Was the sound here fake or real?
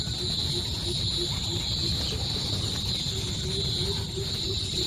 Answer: real